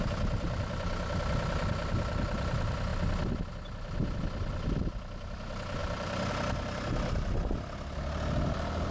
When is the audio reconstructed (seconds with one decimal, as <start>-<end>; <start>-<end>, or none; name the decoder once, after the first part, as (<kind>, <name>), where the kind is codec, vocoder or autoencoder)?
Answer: none